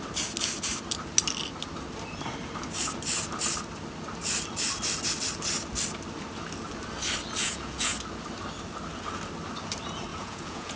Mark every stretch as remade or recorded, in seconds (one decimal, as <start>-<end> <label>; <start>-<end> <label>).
0.0-7.4 recorded; 7.4-7.9 remade; 7.9-10.1 recorded; 10.1-10.8 remade